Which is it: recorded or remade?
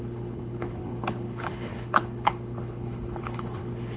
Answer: remade